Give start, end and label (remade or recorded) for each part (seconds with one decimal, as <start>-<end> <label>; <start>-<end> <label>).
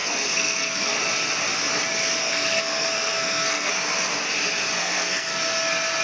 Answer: 0.0-1.0 remade; 1.0-2.2 recorded; 2.2-3.7 remade; 3.7-4.8 recorded; 4.8-5.3 remade; 5.3-6.0 recorded